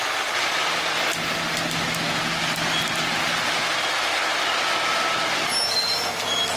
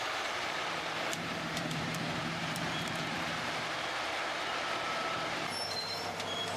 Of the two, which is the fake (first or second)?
second